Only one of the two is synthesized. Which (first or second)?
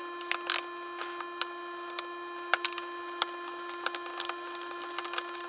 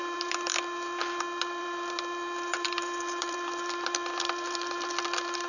second